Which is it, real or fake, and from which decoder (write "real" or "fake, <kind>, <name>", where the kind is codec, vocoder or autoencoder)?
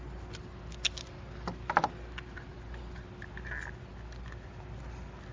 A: real